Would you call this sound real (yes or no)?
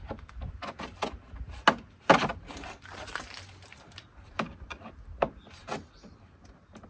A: yes